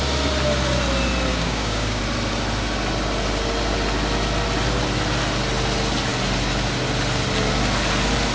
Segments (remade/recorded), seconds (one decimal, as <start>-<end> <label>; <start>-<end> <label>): 0.0-1.3 recorded; 1.3-2.0 remade; 2.0-8.3 recorded